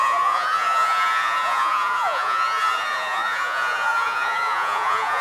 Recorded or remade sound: remade